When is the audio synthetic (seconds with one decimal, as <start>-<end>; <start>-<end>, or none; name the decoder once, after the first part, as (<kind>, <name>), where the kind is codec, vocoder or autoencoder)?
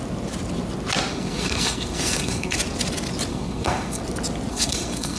1.1-2.6 (codec, SNAC); 3.3-4.0; 4.5-5.2